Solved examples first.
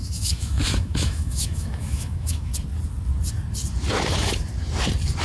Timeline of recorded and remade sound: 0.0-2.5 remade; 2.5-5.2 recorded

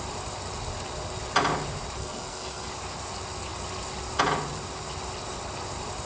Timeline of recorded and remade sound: 0.0-2.0 recorded; 2.0-2.7 remade; 2.7-6.1 recorded

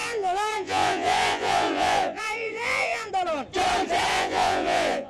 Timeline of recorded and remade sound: 0.0-3.1 remade; 3.1-4.1 recorded; 4.1-5.1 remade

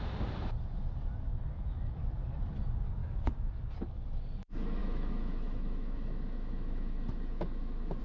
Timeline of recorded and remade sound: 0.0-1.3 recorded; 1.3-2.0 remade; 2.0-3.0 recorded; 3.0-3.5 remade; 3.5-4.8 recorded; 4.8-8.0 remade

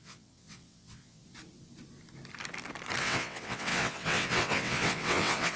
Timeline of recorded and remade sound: 0.0-1.2 remade; 1.2-3.0 recorded; 3.0-5.6 remade

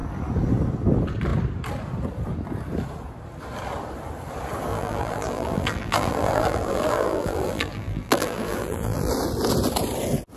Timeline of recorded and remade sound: 0.0-4.7 recorded; 4.7-9.1 remade; 9.1-10.4 recorded

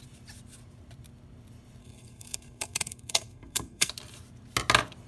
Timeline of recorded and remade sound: 0.0-1.8 recorded; 1.8-3.9 remade; 3.9-5.1 recorded